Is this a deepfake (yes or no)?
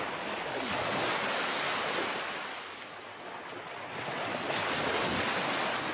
no